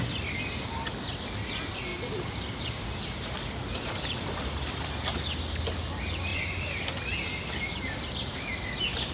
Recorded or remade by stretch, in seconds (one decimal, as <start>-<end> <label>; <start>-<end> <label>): 0.0-9.1 recorded